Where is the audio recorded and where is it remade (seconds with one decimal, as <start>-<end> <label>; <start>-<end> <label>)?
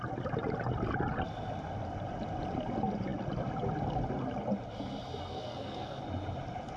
0.0-5.2 recorded; 5.2-6.0 remade; 6.0-6.8 recorded